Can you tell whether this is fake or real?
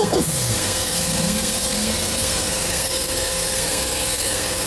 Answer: fake